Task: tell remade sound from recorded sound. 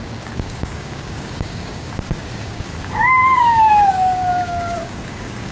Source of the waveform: remade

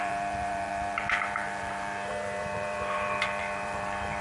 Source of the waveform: remade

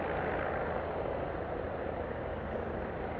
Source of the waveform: recorded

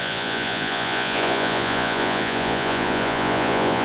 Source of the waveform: remade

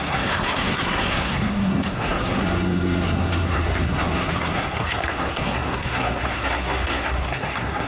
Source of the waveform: remade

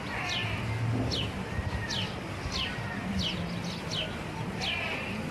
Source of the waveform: recorded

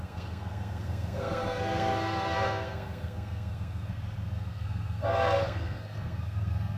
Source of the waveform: remade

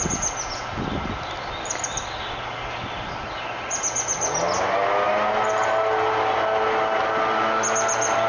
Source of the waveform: recorded